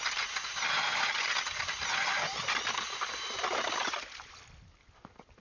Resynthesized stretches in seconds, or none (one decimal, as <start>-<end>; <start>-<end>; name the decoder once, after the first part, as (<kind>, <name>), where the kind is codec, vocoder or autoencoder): none